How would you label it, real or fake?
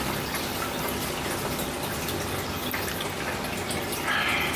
real